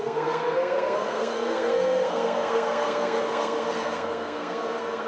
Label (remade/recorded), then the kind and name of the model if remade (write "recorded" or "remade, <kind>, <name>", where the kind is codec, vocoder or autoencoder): remade, codec, SNAC